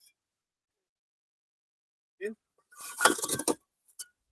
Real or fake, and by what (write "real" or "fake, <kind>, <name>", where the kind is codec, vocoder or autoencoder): real